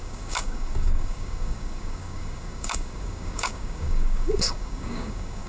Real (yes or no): no